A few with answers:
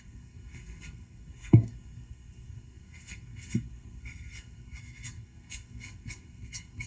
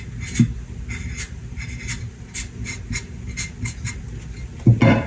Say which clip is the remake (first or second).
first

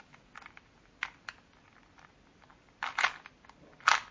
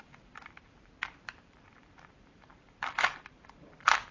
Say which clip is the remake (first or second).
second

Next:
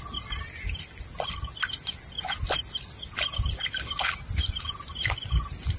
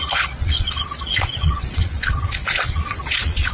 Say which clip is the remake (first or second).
second